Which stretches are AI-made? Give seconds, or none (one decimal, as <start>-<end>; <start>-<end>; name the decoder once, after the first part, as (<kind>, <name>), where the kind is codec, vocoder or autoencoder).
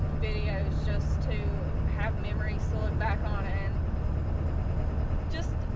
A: none